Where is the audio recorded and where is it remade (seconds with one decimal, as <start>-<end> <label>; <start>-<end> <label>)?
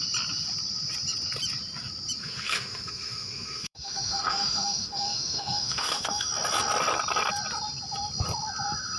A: 0.0-2.2 recorded; 2.2-6.3 remade; 6.3-9.0 recorded